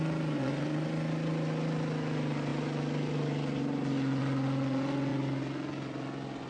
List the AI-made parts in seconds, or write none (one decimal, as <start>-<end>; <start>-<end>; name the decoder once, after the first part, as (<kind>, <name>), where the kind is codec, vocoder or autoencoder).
none